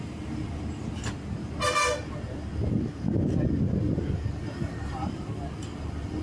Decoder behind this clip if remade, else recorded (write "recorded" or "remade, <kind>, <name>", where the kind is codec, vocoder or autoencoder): recorded